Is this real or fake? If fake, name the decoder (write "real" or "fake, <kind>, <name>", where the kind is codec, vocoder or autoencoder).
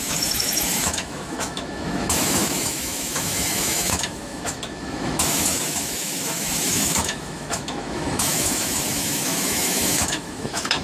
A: fake, autoencoder, DAC-VAE